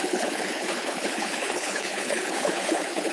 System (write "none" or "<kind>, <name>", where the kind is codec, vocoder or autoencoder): codec, HILCodec